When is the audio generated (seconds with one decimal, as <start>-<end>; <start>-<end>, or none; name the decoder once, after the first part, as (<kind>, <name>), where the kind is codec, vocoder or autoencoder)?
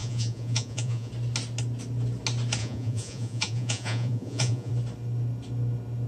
0.0-1.1 (vocoder, Vocos); 2.6-4.7